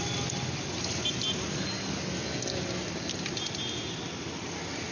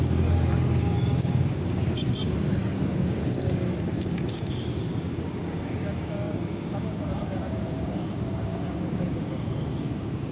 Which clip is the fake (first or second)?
second